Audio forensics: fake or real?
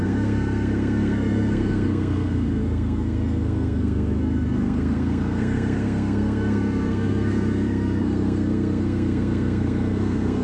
fake